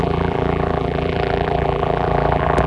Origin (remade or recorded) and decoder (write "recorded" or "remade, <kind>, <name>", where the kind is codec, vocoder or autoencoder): remade, vocoder, BigVGAN v2